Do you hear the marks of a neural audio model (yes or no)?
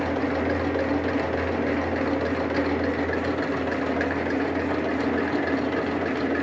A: no